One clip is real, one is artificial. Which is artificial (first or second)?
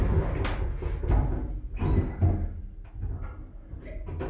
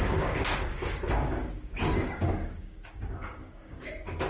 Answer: second